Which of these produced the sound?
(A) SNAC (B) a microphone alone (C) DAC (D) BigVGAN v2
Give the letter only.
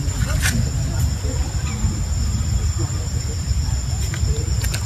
B